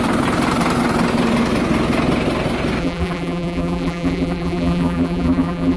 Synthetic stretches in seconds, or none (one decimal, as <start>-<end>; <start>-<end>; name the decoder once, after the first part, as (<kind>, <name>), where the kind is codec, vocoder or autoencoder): 2.8-5.8 (vocoder, BigVGAN v2)